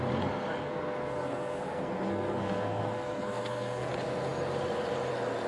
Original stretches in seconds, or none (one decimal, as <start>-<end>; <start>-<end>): 0.0-0.6; 3.9-5.5

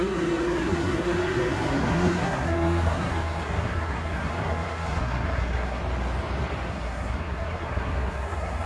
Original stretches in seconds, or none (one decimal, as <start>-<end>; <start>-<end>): 5.8-6.7

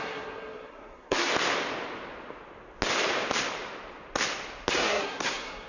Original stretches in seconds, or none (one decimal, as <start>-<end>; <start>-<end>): 1.3-4.7

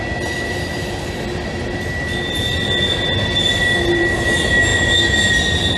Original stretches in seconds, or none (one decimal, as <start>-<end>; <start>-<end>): 0.0-5.8

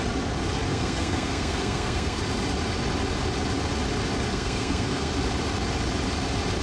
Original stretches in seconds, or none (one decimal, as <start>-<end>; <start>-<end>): 0.0-0.7; 2.2-4.3; 5.1-6.6

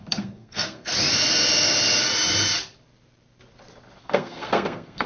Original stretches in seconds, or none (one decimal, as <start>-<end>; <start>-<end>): 0.9-4.0